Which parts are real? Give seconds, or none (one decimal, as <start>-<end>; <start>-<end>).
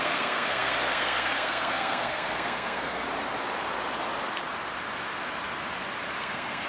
3.0-6.2